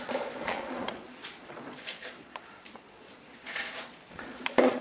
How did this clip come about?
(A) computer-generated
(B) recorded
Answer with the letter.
A